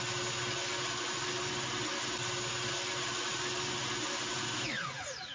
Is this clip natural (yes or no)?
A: yes